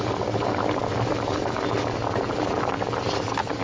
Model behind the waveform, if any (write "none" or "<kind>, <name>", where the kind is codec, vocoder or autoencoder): none